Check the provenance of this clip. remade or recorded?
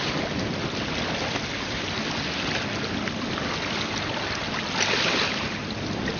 recorded